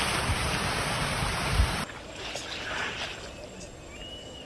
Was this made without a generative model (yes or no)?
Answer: yes